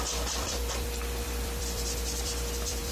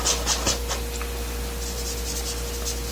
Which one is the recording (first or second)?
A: second